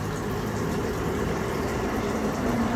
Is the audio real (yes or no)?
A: yes